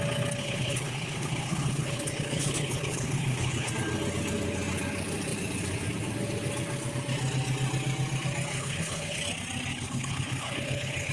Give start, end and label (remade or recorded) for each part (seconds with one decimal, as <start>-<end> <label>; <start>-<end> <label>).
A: 0.0-0.4 recorded; 0.4-3.7 remade; 3.7-8.5 recorded; 8.5-9.2 remade; 9.2-9.7 recorded; 9.7-11.1 remade